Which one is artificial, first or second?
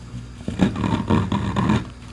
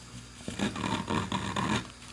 first